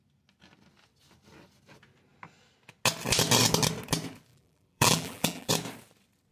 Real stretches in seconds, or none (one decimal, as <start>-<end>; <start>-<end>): 0.0-4.3; 5.5-6.3